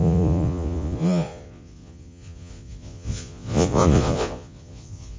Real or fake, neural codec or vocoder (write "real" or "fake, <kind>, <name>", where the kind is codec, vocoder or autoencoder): fake, vocoder, Vocos